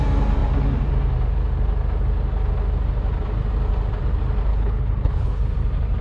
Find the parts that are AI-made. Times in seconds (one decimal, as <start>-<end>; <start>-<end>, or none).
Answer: 4.5-5.4